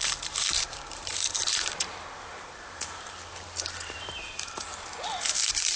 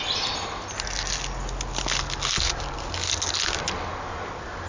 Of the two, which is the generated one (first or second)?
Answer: first